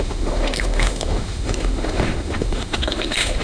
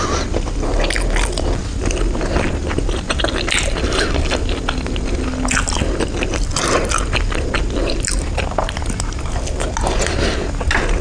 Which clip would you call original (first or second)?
second